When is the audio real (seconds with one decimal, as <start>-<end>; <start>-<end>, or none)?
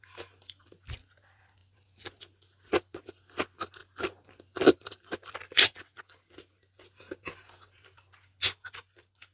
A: 0.0-3.8; 6.0-9.3